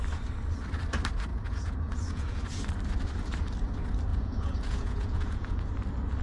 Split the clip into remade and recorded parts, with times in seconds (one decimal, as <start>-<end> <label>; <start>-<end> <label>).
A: 0.0-1.3 recorded; 1.3-2.4 remade; 2.4-4.1 recorded; 4.1-5.6 remade; 5.6-6.2 recorded